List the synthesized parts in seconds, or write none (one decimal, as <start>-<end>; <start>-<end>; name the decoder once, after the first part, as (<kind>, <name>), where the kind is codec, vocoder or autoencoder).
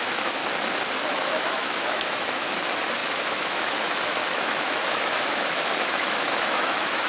0.0-0.4 (autoencoder, DAC-VAE); 1.0-7.1